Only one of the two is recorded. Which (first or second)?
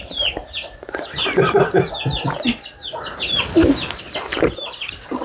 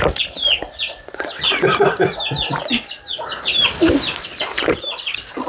first